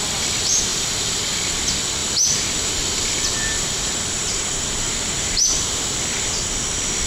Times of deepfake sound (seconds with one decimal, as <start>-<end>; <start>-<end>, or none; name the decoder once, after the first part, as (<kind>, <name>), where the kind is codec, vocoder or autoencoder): 0.7-1.5 (vocoder, BigVGAN v2); 2.0-6.3